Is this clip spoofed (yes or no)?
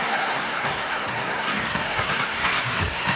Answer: yes